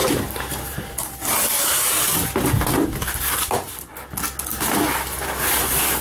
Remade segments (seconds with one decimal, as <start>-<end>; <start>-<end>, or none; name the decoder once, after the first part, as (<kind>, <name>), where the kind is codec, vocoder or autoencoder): 0.0-1.6 (vocoder, BigVGAN v2)